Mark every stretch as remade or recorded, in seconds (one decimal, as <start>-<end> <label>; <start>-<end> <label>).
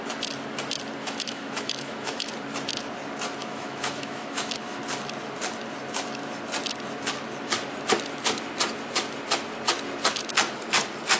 0.0-1.0 recorded; 1.0-2.3 remade; 2.3-3.4 recorded; 3.4-4.8 remade; 4.8-11.2 recorded